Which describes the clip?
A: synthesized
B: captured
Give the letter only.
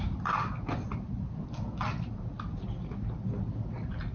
B